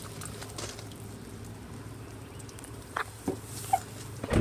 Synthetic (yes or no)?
no